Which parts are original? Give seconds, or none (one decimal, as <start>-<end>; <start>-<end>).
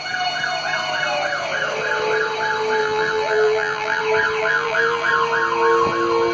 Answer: 0.0-2.8; 4.0-4.4; 5.1-6.3